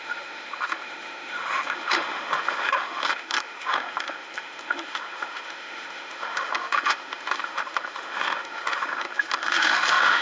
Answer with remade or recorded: remade